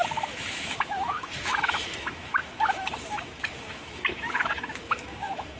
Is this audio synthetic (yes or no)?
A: yes